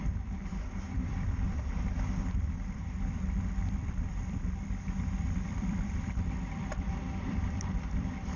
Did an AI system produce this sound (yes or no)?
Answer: yes